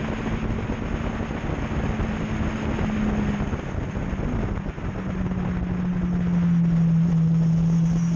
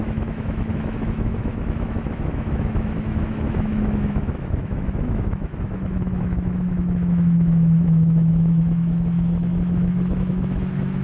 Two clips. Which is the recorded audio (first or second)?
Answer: first